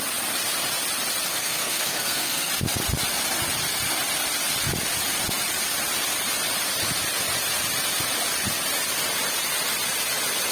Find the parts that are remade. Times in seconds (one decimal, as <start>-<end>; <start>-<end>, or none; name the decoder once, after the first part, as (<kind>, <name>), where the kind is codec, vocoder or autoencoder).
1.3-2.5 (codec, SNAC)